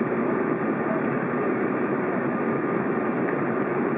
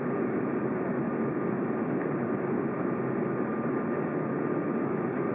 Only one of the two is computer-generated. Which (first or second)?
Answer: first